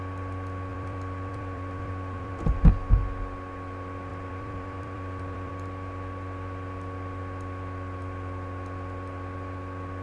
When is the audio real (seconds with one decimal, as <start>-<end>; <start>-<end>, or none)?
0.0-0.7; 2.7-4.1; 5.5-10.0